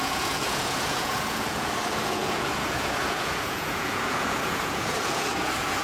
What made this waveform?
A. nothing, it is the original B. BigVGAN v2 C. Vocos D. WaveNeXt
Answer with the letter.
C